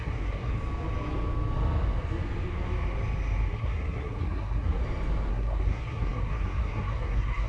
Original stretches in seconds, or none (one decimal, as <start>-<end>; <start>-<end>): 0.5-3.5; 4.8-5.3